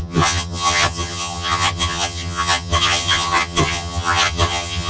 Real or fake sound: fake